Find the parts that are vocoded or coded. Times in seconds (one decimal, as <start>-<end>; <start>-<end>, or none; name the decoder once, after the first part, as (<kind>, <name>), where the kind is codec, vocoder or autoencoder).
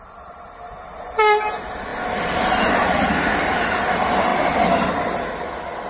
none